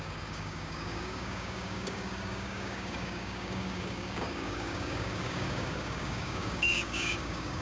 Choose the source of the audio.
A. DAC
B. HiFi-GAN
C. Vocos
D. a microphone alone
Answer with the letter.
A